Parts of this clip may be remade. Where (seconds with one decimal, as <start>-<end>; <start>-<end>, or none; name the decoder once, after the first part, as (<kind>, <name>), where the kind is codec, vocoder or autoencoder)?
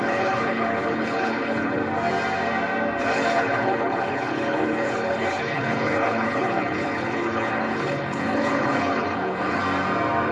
0.0-1.8 (codec, HILCodec); 3.0-9.6